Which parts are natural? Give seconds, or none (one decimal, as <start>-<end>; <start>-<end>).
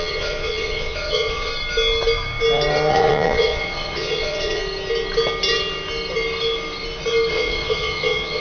1.5-2.9; 4.6-7.3